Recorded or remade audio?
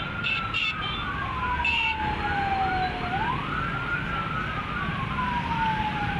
recorded